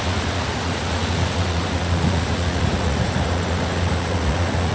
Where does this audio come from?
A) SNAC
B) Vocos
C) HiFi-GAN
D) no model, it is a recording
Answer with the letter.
B